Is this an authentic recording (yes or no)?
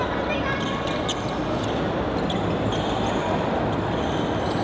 yes